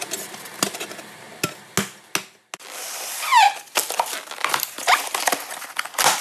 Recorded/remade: recorded